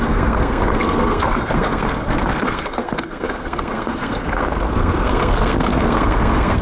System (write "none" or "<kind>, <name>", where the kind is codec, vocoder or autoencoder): codec, SNAC